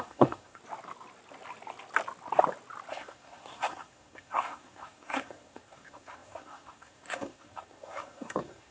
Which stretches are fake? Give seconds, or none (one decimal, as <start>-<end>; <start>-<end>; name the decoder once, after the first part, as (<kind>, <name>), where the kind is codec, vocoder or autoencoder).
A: 0.0-0.6 (codec, SNAC); 2.9-8.7